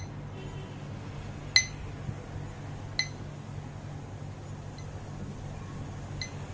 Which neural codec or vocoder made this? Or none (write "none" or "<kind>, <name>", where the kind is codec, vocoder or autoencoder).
none